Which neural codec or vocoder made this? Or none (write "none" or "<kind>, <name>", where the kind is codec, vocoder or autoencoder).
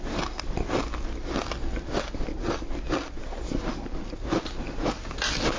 none